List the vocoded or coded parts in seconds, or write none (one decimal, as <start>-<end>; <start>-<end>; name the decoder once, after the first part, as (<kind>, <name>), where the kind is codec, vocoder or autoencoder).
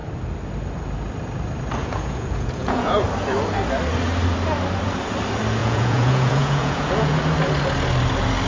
1.8-2.9 (vocoder, Vocos); 5.6-7.2